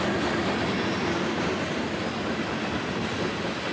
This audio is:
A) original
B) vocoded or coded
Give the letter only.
A